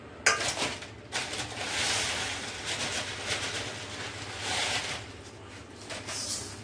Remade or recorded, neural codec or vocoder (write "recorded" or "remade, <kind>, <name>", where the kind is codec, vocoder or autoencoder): recorded